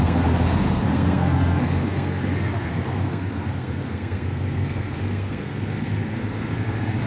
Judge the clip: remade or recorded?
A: remade